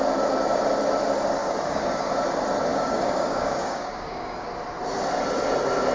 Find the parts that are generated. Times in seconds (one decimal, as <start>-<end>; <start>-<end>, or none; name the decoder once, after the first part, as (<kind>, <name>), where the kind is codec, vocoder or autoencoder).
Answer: 1.4-2.1 (codec, DAC); 2.7-4.5